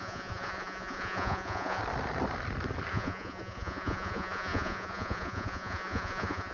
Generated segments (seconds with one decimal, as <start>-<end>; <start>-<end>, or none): 0.0-1.8; 2.9-6.5